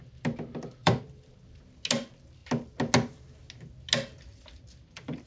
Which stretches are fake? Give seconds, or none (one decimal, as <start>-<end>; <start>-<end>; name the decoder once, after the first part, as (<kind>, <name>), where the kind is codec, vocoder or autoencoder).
0.8-1.3 (vocoder, BigVGAN v2); 4.3-5.3